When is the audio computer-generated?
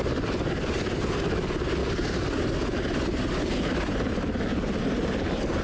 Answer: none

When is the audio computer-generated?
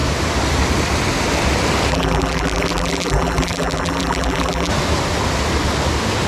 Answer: 1.9-4.7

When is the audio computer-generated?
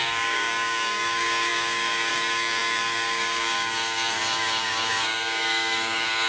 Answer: 0.0-6.3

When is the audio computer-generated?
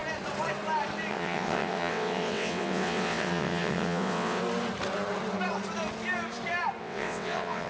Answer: 1.1-4.4; 6.8-7.7